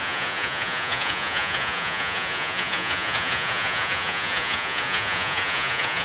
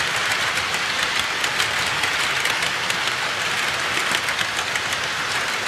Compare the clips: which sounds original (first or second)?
second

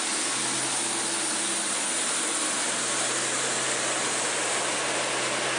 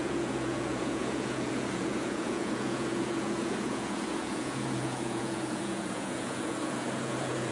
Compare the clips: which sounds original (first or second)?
first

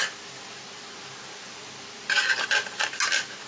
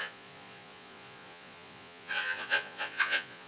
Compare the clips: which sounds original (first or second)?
first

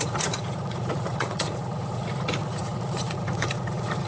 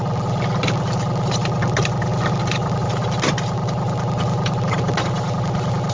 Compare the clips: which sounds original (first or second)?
second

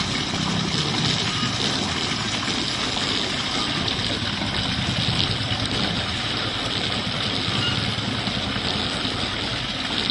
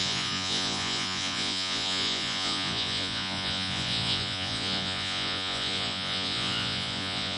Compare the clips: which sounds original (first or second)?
first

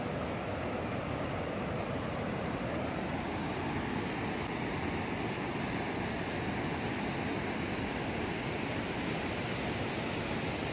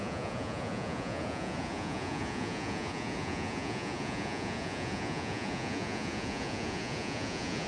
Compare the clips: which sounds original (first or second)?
first